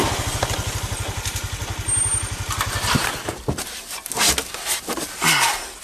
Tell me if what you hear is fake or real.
real